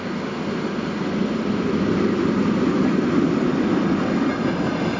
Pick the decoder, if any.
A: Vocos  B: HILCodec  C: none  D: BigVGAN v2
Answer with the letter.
C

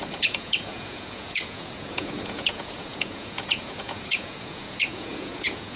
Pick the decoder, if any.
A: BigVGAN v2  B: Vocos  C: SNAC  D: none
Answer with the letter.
B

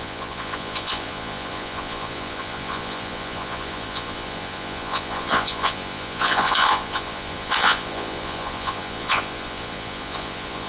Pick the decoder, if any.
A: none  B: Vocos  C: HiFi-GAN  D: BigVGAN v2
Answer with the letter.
B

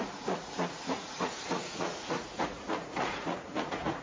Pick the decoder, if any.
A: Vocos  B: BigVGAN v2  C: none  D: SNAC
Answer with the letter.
A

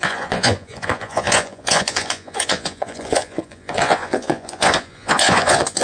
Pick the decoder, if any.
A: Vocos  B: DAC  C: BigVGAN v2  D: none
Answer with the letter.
A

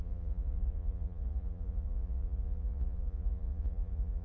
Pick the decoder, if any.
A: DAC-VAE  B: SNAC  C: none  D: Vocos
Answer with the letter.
D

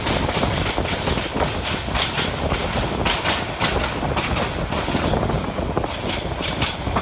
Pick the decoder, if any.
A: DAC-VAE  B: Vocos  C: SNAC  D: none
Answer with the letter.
D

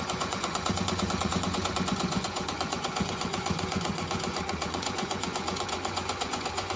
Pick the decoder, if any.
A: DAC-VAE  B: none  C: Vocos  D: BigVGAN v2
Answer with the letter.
C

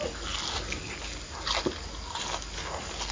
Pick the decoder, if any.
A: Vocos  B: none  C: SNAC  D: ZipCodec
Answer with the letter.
B